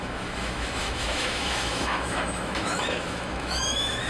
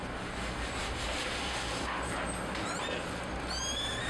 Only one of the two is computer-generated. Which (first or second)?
first